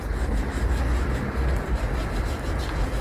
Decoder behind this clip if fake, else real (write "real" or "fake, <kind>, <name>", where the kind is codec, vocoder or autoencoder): real